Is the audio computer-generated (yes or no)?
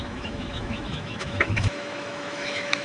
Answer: yes